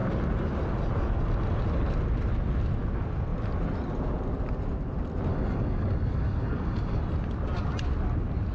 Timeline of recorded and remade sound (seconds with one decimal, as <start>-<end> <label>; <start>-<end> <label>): 0.0-5.3 recorded; 5.3-7.0 remade; 7.0-8.5 recorded